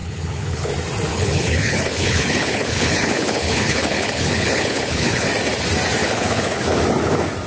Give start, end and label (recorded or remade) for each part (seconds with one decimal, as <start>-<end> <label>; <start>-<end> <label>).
0.0-0.7 remade; 0.7-1.1 recorded; 1.1-5.3 remade; 5.3-6.0 recorded; 6.0-6.8 remade; 6.8-7.5 recorded